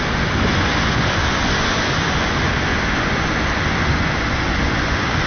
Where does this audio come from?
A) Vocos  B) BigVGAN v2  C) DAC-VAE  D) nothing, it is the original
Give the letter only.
A